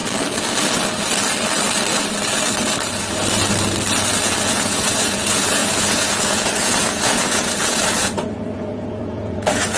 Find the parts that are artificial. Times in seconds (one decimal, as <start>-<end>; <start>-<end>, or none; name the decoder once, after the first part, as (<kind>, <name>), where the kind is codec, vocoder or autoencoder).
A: 4.4-9.8 (vocoder, Vocos)